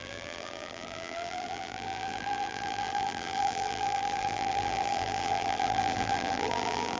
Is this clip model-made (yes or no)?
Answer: yes